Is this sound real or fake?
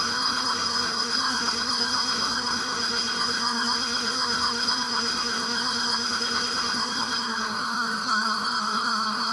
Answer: fake